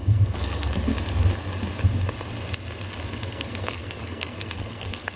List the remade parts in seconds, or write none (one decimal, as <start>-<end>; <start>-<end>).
0.0-0.9; 3.1-5.2